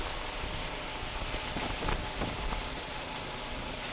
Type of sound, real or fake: real